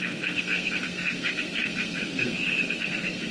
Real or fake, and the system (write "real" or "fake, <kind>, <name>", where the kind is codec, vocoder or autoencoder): fake, codec, SNAC